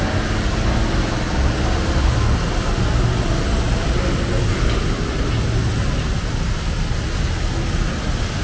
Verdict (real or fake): real